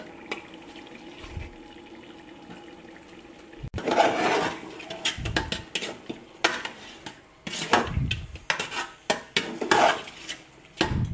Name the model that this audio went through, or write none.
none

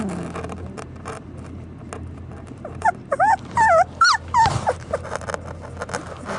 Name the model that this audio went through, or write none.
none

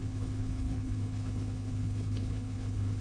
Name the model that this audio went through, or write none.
codec, HILCodec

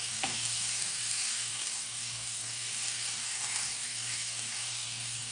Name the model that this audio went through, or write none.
codec, DAC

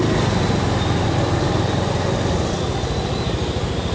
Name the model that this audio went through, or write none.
none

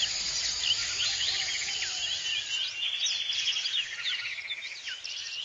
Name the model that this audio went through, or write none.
none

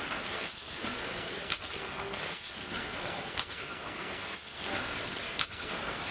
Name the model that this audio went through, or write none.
codec, SNAC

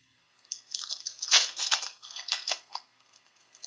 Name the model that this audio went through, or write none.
codec, SNAC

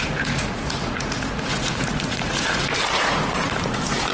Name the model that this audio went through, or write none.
vocoder, Vocos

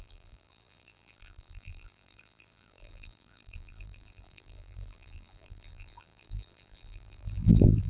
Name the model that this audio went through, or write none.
vocoder, BigVGAN v2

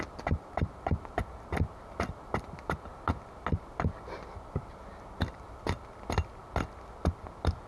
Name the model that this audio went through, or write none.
none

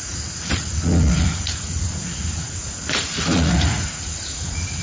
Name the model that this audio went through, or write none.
vocoder, Vocos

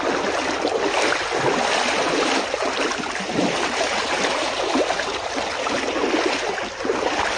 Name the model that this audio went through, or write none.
none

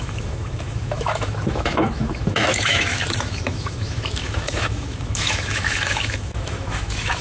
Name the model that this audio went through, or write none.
autoencoder, DAC-VAE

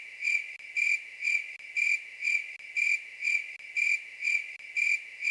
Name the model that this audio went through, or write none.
none